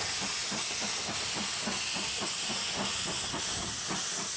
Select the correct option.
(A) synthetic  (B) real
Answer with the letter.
B